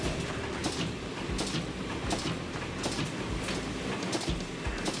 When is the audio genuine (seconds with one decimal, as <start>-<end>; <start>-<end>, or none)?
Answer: 0.0-0.6; 3.5-5.0